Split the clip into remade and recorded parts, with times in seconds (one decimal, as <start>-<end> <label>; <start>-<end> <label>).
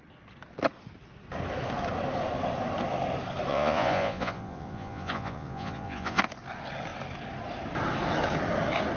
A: 0.0-3.5 recorded; 3.5-6.2 remade; 6.2-9.0 recorded